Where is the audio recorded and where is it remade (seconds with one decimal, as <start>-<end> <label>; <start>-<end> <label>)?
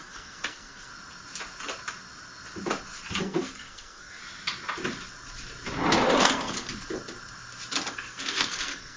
0.0-0.9 remade; 0.9-3.2 recorded; 3.2-4.2 remade; 4.2-6.2 recorded; 6.2-6.7 remade; 6.7-7.9 recorded; 7.9-9.0 remade